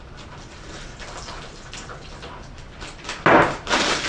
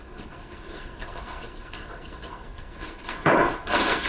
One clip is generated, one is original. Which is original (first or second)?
first